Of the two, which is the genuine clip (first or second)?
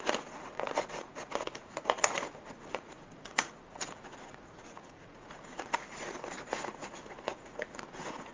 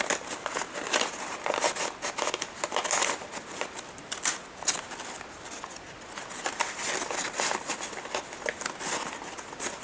second